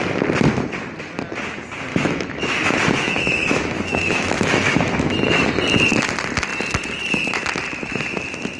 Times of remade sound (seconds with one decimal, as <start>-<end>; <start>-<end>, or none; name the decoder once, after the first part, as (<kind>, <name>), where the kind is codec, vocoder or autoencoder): 1.9-5.5 (autoencoder, DAC-VAE)